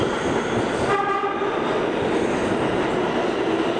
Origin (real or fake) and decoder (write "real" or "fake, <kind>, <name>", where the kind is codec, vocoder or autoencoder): real